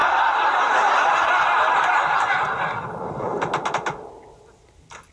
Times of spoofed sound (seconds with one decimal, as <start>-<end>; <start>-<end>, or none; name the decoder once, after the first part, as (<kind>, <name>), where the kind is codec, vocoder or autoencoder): none